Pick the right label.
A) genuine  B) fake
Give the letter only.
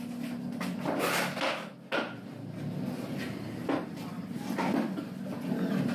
A